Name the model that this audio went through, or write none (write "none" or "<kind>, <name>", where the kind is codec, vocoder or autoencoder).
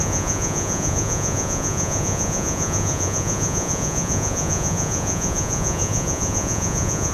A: vocoder, Vocos